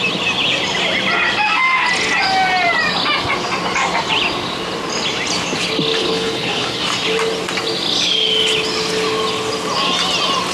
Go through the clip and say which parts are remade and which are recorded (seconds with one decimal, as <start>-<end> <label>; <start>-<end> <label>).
0.0-6.0 recorded; 6.0-6.8 remade; 6.8-10.5 recorded